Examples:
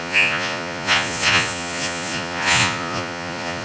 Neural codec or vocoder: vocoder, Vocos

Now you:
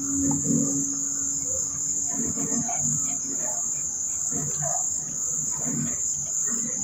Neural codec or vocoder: none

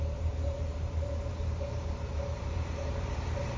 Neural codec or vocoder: vocoder, BigVGAN v2